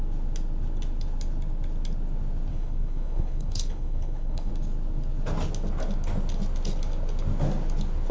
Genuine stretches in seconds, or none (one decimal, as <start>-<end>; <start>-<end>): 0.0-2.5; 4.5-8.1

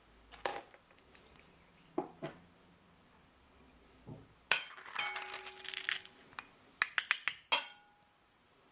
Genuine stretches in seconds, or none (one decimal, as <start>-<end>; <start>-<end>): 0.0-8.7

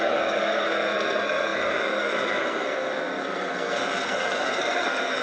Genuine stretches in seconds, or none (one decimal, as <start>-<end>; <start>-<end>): none